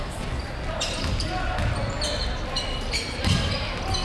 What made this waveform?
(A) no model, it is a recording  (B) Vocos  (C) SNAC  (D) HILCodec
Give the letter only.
A